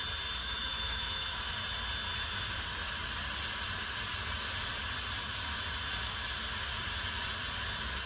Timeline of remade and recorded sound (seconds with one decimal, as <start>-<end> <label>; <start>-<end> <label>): 0.0-0.4 recorded; 0.4-1.4 remade; 1.4-8.1 recorded